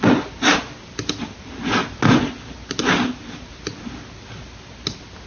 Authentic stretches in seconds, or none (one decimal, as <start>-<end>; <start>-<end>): 0.0-5.3